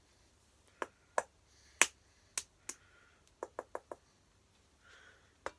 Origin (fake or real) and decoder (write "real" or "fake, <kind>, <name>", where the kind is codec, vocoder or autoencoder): real